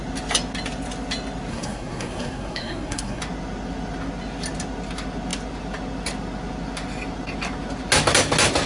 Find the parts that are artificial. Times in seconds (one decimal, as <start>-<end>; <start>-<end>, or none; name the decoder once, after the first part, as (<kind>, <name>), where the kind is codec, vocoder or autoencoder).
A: 1.5-3.2 (codec, SNAC)